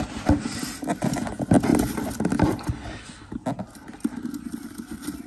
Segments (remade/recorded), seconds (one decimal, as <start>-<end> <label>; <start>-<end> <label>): 0.0-5.3 recorded